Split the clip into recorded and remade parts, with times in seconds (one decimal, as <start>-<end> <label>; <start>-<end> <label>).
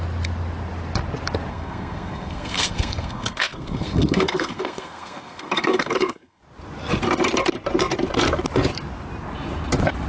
0.0-1.5 recorded; 1.5-6.4 remade; 6.4-10.1 recorded